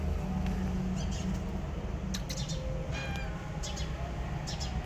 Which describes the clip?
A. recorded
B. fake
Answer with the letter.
A